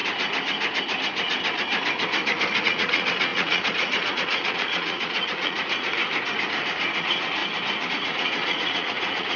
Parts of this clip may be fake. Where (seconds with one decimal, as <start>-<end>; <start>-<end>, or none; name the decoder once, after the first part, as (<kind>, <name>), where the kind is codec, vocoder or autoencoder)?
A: 2.6-6.0 (vocoder, Vocos); 6.5-7.4; 7.9-9.4

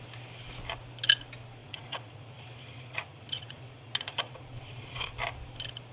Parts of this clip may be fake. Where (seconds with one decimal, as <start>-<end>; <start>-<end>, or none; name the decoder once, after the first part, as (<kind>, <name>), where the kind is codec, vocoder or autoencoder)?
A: 1.6-5.1 (vocoder, Vocos)

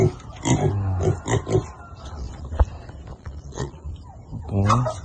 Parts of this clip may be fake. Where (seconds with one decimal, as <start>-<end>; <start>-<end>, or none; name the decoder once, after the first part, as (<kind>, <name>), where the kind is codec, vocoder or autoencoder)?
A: 2.0-2.6 (vocoder, Vocos); 3.1-3.9

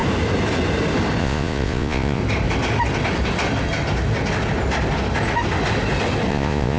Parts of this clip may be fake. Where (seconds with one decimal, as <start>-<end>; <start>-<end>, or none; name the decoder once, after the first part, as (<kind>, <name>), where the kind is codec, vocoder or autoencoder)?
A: 1.2-2.2 (vocoder, Vocos); 6.3-6.8